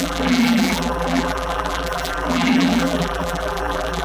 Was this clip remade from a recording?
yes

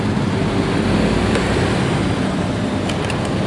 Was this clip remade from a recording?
no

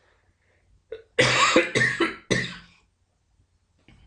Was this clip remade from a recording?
no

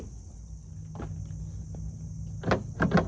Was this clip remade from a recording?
no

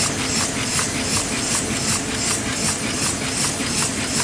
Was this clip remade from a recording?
no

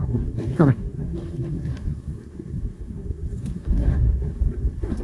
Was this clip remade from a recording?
yes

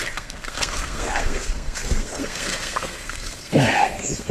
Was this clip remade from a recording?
yes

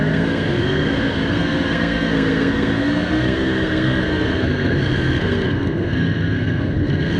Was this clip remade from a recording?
yes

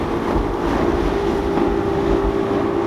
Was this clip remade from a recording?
no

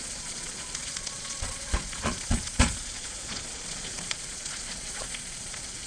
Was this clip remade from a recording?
yes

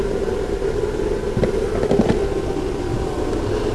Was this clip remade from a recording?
no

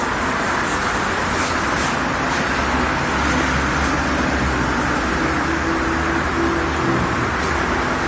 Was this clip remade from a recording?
no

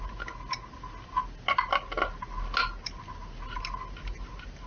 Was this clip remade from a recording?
no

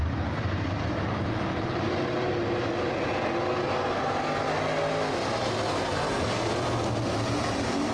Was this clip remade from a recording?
no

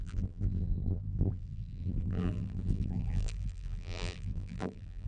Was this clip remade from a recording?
yes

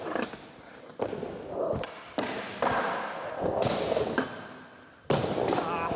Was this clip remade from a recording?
no